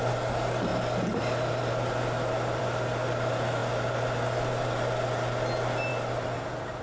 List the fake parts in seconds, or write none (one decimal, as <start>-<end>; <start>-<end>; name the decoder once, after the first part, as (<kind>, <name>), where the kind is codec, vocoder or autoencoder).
none